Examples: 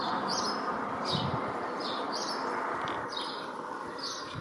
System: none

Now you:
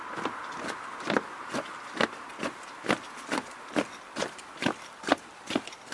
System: none